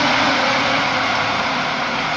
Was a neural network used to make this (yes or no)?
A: yes